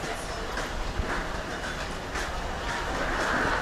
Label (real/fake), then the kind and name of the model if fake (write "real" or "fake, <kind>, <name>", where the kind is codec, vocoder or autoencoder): real